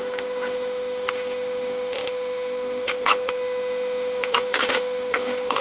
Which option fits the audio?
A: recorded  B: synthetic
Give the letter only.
B